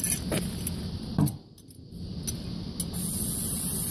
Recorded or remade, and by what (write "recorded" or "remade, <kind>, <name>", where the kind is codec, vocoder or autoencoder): recorded